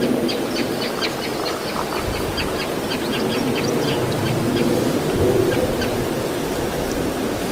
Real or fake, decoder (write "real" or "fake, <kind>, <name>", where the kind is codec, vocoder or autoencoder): real